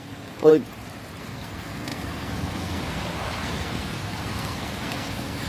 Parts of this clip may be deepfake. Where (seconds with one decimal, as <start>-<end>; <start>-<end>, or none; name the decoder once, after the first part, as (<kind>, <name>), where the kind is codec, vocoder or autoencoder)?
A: 0.0-0.5 (codec, SNAC); 1.2-5.5